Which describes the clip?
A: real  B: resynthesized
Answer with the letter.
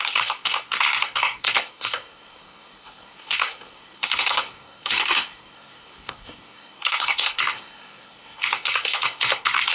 B